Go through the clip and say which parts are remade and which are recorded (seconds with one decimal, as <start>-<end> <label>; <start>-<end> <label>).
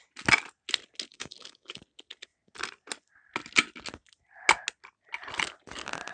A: 0.0-1.1 recorded; 1.1-1.8 remade; 1.8-6.1 recorded